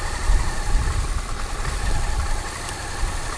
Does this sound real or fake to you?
fake